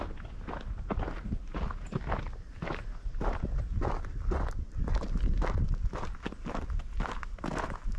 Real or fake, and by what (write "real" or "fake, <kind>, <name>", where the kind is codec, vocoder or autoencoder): real